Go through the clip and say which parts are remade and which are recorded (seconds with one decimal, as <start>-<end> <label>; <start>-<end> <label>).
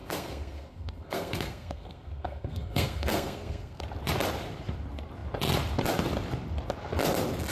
0.0-3.8 remade; 3.8-7.5 recorded